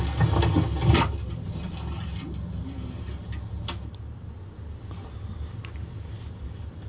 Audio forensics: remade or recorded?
recorded